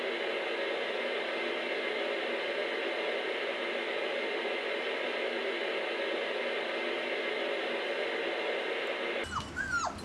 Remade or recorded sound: recorded